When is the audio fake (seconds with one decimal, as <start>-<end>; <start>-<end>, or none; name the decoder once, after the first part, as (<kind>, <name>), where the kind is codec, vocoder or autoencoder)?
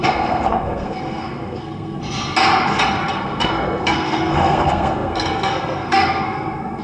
0.0-2.0 (codec, SNAC); 2.8-6.8